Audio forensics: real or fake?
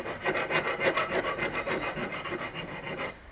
real